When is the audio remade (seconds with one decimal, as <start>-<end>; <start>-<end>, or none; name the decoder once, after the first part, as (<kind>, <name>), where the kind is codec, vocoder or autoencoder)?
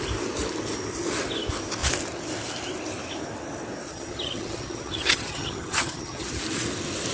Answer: 3.9-6.4 (vocoder, HiFi-GAN)